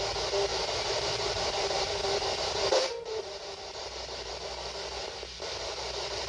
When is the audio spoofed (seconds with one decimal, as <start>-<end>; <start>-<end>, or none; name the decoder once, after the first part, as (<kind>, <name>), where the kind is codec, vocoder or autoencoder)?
0.5-4.3 (vocoder, BigVGAN v2)